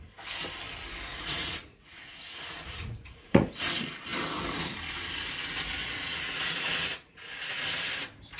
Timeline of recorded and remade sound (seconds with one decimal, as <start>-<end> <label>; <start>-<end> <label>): 0.0-1.1 recorded; 1.1-3.5 remade; 3.5-5.8 recorded; 5.8-7.4 remade; 7.4-8.4 recorded